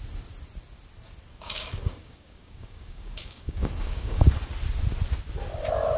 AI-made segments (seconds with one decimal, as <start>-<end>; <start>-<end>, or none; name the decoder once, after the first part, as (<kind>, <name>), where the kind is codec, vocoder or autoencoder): 1.3-4.4 (codec, DAC)